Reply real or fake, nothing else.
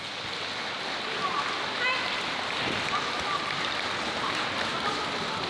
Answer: real